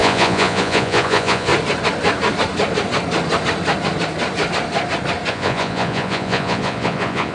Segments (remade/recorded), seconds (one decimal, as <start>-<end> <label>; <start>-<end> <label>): 0.0-1.5 remade; 1.5-5.3 recorded; 5.3-7.3 remade